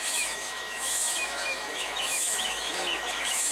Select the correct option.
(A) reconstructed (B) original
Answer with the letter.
A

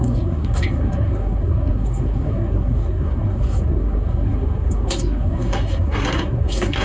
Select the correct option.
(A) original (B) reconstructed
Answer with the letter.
B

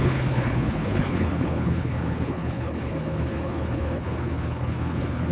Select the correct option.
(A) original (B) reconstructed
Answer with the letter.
B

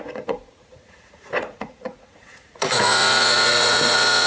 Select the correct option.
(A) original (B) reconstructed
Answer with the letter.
B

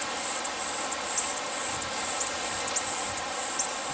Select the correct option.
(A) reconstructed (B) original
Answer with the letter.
B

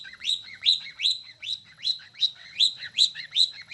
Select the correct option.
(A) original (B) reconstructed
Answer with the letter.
B